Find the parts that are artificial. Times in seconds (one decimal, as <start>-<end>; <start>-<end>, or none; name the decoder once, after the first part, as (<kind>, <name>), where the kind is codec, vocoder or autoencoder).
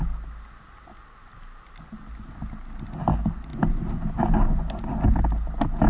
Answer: none